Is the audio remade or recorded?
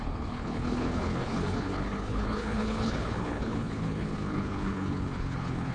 remade